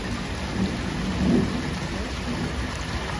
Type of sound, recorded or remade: recorded